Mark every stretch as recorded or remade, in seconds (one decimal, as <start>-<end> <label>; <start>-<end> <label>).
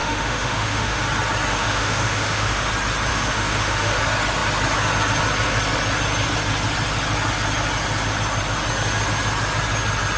0.0-1.0 remade; 1.0-1.5 recorded; 1.5-2.7 remade; 2.7-3.1 recorded; 3.1-4.0 remade; 4.0-10.2 recorded